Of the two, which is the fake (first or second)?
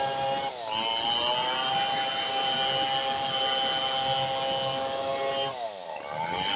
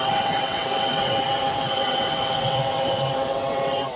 second